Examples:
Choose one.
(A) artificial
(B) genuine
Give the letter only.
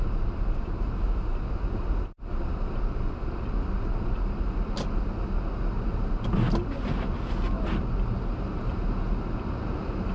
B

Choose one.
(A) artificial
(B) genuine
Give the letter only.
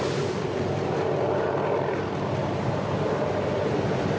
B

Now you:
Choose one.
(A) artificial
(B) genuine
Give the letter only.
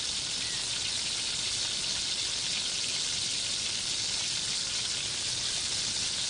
B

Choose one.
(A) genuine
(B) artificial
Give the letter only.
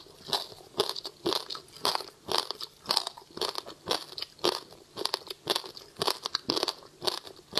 A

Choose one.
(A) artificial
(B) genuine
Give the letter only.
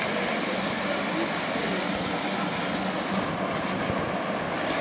B